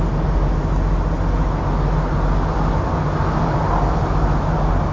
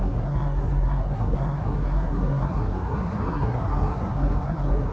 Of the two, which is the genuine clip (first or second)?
first